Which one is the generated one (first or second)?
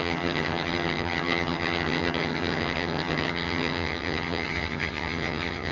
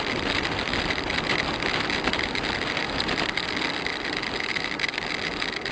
first